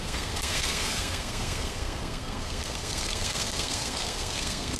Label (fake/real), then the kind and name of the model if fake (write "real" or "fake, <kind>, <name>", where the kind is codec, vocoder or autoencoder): fake, codec, SNAC